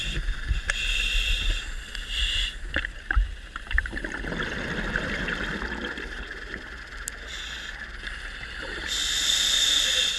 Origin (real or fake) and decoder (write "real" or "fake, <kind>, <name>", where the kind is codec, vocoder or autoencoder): real